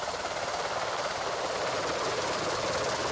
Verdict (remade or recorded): recorded